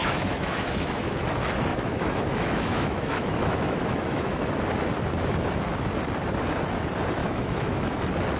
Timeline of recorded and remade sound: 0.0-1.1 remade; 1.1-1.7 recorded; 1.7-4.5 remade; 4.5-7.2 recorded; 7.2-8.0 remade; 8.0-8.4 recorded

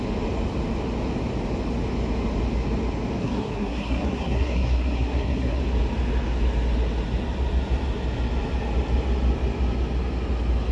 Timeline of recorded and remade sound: 0.0-3.2 recorded; 3.2-5.6 remade; 5.6-10.7 recorded

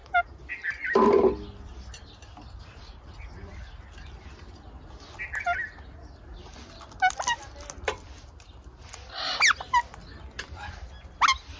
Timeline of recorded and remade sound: 0.0-11.6 recorded

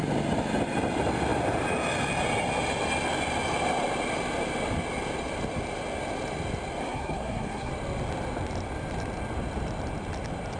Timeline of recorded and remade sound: 0.0-6.8 recorded; 6.8-7.7 remade; 7.7-10.6 recorded